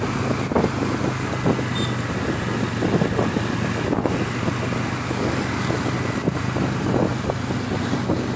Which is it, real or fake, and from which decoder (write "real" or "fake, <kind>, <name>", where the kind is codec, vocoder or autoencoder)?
real